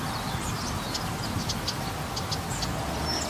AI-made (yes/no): no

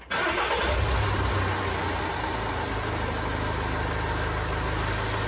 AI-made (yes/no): no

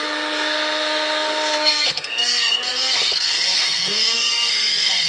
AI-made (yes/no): yes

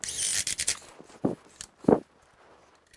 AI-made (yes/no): no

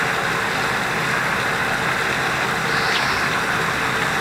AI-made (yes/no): no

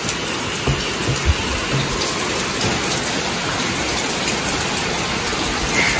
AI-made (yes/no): no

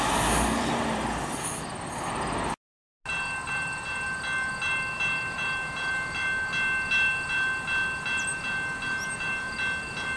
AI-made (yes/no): no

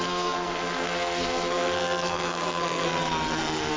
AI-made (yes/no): yes